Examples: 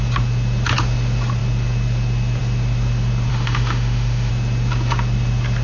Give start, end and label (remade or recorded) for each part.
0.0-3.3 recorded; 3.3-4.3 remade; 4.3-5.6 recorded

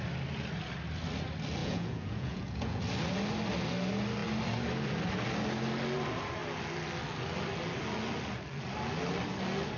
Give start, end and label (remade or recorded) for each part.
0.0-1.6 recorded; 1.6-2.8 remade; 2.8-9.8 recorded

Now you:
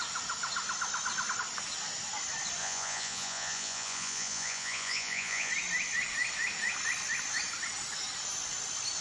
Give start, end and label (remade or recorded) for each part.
0.0-2.6 recorded; 2.6-5.5 remade; 5.5-9.0 recorded

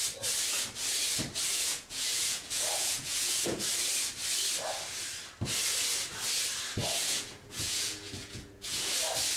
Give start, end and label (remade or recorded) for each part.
0.0-1.5 recorded; 1.5-3.7 remade; 3.7-6.8 recorded; 6.8-8.9 remade; 8.9-9.4 recorded